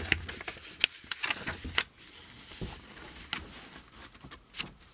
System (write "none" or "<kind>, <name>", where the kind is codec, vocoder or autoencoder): none